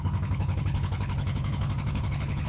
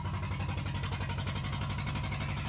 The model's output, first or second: first